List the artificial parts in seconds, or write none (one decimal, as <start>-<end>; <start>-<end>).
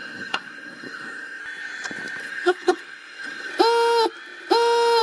0.0-1.4; 2.2-3.5